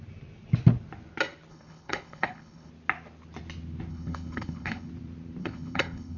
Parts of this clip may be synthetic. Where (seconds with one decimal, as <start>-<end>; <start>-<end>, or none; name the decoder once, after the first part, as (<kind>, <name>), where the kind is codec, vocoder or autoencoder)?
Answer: 1.5-2.7 (codec, HILCodec); 3.9-4.9; 5.4-6.2